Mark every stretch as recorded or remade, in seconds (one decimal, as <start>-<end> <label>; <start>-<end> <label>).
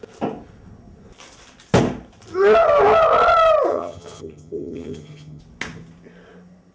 0.0-3.7 recorded; 3.7-5.4 remade; 5.4-6.7 recorded